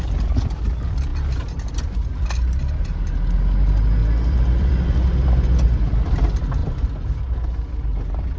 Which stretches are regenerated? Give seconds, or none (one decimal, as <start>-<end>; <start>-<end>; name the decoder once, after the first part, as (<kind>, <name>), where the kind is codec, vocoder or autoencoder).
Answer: 4.0-4.7 (vocoder, BigVGAN v2); 6.6-7.2